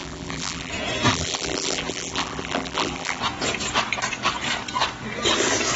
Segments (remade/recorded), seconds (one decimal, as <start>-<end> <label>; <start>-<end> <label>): 0.0-0.7 remade; 0.7-1.1 recorded; 1.1-3.2 remade; 3.2-5.8 recorded